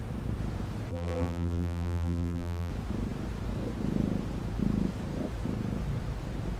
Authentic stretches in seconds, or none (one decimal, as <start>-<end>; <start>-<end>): 0.0-0.9; 2.7-6.6